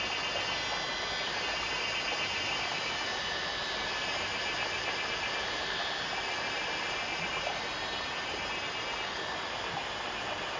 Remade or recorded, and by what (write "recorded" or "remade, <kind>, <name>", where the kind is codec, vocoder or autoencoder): recorded